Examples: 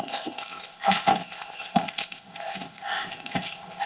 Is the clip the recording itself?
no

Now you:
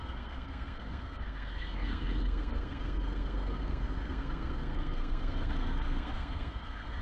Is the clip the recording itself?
no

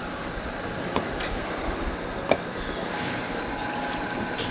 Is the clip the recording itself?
yes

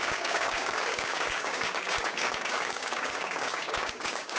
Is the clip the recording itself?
no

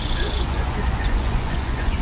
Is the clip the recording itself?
no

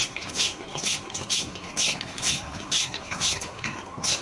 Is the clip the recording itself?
no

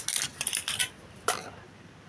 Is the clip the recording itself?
yes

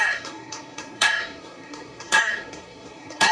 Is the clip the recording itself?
no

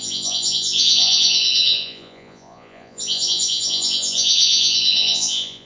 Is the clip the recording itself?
no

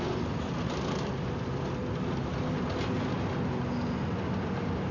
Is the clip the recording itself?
yes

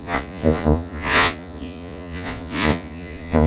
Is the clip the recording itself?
no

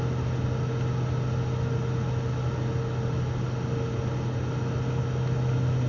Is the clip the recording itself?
yes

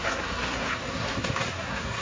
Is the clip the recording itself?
no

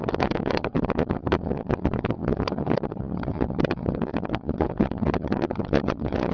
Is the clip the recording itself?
no